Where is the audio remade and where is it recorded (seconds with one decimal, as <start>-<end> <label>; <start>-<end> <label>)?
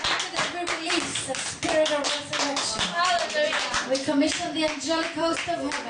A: 0.0-1.1 remade; 1.1-3.7 recorded; 3.7-5.9 remade